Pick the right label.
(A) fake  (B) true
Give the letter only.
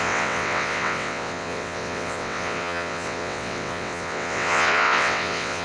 A